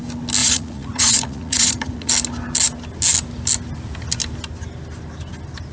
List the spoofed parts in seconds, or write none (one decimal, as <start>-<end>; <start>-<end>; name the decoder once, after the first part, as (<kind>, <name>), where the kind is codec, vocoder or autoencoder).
0.4-2.1 (vocoder, Vocos)

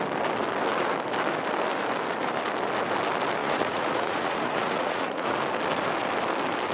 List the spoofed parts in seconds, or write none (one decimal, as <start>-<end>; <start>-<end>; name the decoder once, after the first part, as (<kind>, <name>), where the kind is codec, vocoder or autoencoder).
3.4-5.3 (vocoder, Vocos)